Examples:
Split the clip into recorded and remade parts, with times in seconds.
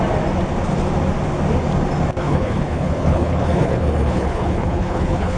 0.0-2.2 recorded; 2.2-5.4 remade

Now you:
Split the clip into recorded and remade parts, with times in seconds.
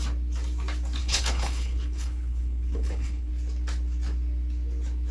0.0-1.0 recorded; 1.0-3.3 remade; 3.3-5.1 recorded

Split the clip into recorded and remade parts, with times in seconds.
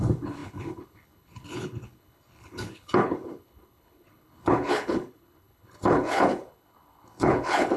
0.0-7.8 remade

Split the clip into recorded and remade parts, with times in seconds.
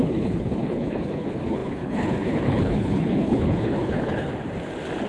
0.0-4.3 remade; 4.3-5.1 recorded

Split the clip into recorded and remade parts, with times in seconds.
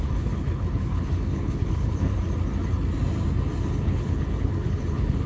0.0-2.1 remade; 2.1-3.8 recorded; 3.8-5.3 remade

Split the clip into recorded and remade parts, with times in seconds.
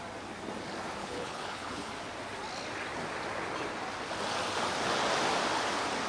0.0-1.0 recorded; 1.0-1.9 remade; 1.9-6.1 recorded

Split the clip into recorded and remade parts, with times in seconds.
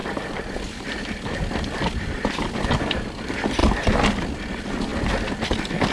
0.0-5.9 recorded